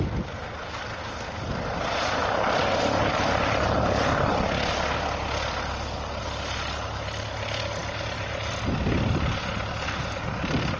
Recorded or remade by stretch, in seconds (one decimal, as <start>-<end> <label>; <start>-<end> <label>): 0.0-10.8 recorded